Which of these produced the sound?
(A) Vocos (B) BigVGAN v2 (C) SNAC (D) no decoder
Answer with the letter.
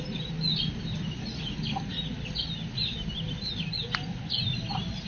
D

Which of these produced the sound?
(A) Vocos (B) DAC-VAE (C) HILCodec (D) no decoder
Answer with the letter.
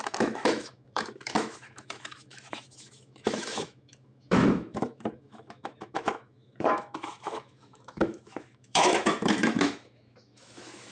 B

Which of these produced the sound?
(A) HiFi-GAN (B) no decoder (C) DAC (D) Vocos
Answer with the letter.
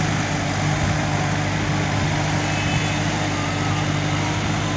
B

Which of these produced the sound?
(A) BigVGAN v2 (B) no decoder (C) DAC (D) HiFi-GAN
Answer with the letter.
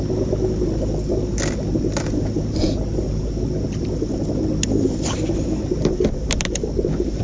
B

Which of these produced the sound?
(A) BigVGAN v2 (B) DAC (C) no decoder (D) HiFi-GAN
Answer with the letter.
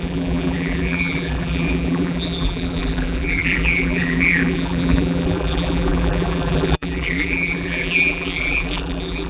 A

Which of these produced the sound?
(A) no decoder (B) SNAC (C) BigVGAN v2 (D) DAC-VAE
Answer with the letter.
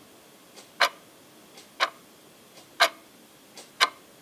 A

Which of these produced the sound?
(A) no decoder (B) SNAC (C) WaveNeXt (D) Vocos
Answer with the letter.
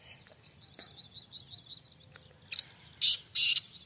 A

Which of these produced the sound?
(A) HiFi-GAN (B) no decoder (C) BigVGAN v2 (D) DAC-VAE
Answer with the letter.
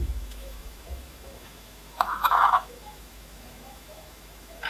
D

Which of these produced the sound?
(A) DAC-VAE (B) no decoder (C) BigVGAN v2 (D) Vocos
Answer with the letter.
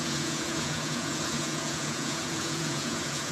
D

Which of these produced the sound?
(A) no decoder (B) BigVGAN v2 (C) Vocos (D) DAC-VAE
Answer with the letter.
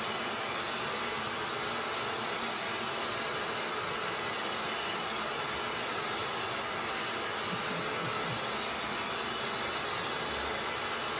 A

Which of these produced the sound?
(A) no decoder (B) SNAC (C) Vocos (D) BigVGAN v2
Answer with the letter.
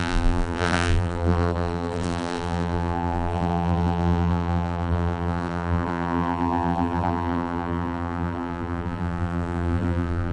D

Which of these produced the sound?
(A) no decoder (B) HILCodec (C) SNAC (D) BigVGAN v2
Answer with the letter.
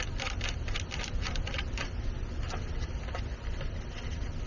A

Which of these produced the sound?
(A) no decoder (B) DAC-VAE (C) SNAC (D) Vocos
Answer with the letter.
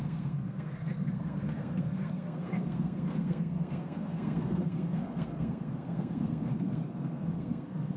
C